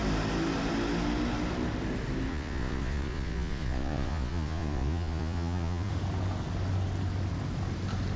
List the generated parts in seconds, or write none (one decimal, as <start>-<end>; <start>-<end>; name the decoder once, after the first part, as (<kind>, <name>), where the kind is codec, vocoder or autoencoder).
2.3-5.9 (vocoder, Vocos)